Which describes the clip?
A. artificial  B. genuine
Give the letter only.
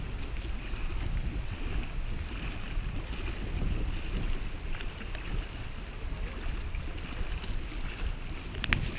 B